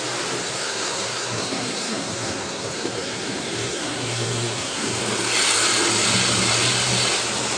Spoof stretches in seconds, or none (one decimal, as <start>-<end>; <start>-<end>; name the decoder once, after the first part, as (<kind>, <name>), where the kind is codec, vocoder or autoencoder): 0.4-5.0 (codec, SNAC)